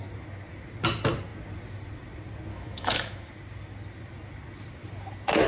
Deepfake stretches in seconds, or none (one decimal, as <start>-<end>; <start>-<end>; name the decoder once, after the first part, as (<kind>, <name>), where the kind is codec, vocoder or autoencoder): 2.5-3.3 (autoencoder, DAC-VAE)